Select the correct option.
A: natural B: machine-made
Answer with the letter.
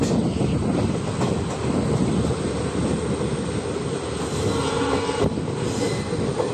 A